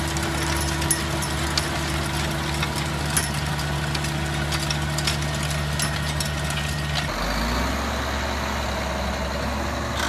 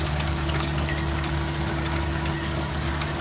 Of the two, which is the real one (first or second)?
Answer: first